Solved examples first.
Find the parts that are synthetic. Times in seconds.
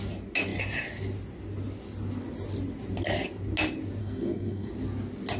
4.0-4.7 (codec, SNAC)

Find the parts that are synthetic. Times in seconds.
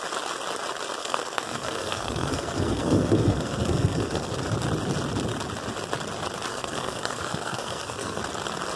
1.0-4.3 (codec, SNAC); 6.5-8.2